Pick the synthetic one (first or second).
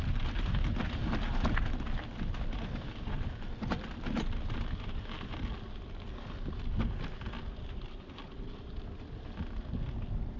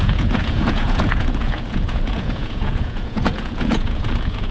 second